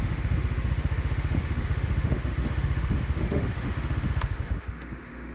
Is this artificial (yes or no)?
yes